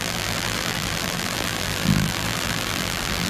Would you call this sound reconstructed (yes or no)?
yes